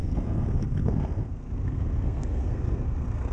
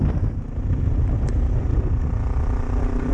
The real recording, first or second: second